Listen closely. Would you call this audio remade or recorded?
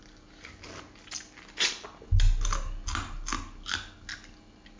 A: recorded